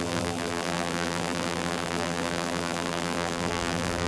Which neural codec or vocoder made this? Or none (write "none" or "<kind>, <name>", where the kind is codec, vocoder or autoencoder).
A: vocoder, BigVGAN v2